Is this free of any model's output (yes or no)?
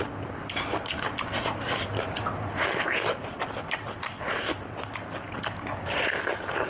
yes